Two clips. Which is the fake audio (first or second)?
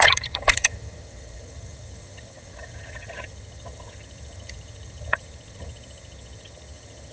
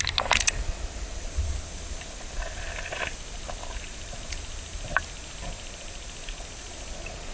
first